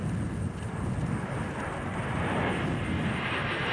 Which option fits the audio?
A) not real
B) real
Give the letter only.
B